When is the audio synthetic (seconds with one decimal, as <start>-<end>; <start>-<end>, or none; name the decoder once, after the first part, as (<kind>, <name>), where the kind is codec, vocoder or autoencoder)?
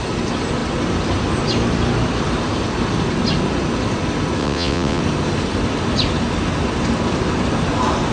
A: 4.4-5.0 (vocoder, WaveNeXt)